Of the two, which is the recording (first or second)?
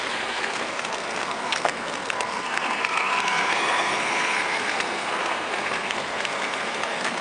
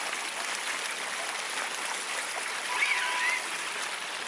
second